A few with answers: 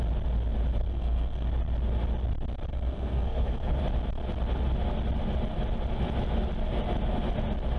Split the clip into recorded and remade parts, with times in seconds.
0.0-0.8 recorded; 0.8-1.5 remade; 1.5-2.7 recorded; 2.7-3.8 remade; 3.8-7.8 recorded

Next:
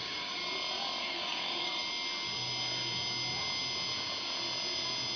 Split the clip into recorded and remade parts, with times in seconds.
0.0-0.4 remade; 0.4-1.0 recorded; 1.0-1.8 remade; 1.8-5.2 recorded

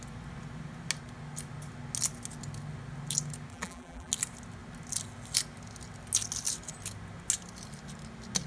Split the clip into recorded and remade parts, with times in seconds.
0.0-3.5 recorded; 3.5-4.1 remade; 4.1-8.5 recorded

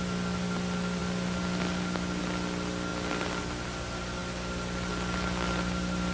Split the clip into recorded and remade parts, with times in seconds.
0.0-6.1 recorded

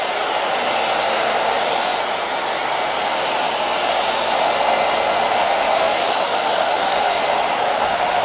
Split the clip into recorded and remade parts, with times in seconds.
0.0-5.4 recorded; 5.4-7.2 remade; 7.2-7.7 recorded; 7.7-8.2 remade

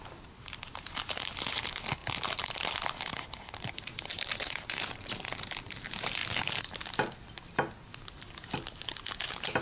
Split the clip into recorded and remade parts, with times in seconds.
0.0-6.2 remade; 6.2-8.3 recorded; 8.3-9.6 remade

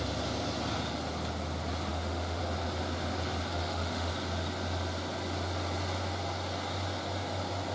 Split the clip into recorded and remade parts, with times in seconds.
0.0-1.9 recorded; 1.9-2.4 remade; 2.4-3.5 recorded; 3.5-4.1 remade; 4.1-7.7 recorded

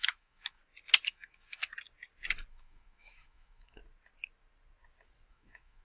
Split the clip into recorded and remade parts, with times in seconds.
0.0-0.6 remade; 0.6-1.1 recorded; 1.1-1.6 remade; 1.6-2.5 recorded; 2.5-3.8 remade; 3.8-5.3 recorded; 5.3-5.8 remade